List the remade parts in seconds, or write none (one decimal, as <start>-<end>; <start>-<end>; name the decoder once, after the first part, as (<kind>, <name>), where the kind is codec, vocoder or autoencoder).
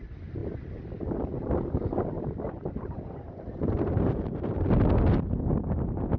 none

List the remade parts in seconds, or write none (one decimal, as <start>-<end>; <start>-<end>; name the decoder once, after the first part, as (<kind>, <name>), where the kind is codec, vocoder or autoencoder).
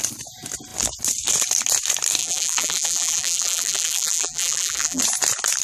2.2-5.0 (vocoder, BigVGAN v2)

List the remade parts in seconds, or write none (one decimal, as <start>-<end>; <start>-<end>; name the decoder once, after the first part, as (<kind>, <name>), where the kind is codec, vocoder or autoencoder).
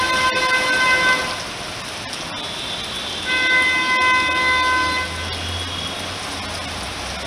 none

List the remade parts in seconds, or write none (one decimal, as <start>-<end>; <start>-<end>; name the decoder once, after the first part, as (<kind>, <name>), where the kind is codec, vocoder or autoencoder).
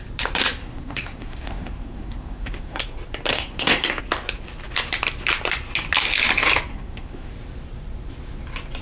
0.6-2.8 (codec, SNAC); 3.3-4.0; 6.7-7.3